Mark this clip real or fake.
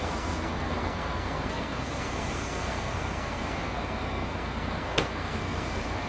fake